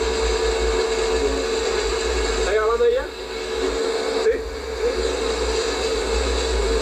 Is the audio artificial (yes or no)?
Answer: no